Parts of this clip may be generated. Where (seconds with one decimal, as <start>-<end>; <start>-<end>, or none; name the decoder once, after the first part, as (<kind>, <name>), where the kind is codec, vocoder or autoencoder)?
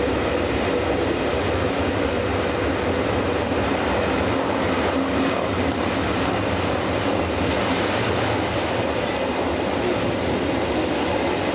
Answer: none